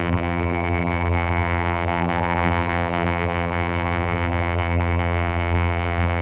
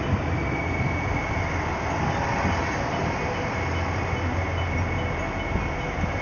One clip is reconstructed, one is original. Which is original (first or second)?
second